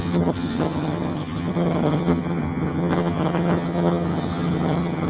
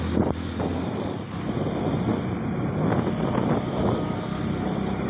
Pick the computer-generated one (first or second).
first